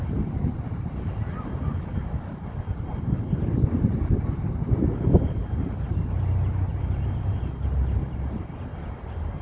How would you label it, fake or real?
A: real